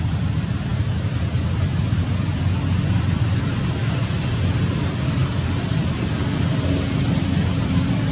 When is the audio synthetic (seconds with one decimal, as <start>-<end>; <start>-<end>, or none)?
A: none